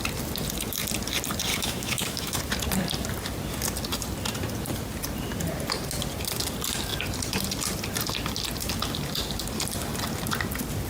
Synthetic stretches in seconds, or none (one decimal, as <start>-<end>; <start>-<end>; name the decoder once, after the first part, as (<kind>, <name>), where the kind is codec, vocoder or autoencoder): 1.5-2.4 (autoencoder, DAC-VAE)